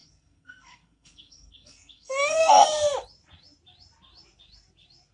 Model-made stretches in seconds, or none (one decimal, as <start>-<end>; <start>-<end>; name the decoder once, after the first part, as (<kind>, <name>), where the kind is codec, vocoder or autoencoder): 0.0-2.5 (codec, SNAC)